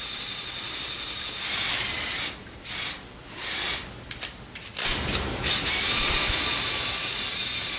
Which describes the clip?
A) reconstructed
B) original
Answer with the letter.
A